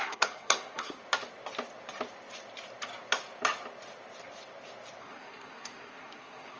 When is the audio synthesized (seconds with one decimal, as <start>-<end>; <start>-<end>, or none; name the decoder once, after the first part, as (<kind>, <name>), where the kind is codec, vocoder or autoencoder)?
0.0-1.0 (codec, SNAC); 5.0-6.6